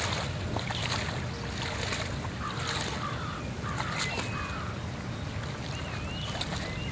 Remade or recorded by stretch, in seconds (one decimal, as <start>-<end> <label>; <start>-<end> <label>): 0.0-6.9 recorded